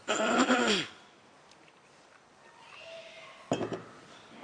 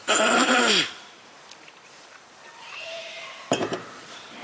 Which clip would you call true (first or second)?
first